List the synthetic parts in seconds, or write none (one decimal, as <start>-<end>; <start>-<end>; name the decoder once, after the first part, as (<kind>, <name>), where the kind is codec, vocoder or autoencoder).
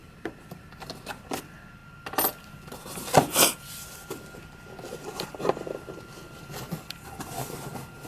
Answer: 0.0-0.7 (vocoder, BigVGAN v2)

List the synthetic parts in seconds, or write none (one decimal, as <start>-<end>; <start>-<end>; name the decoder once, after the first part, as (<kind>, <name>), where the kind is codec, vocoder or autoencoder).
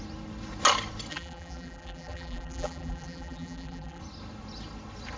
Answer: 1.1-4.0 (vocoder, BigVGAN v2)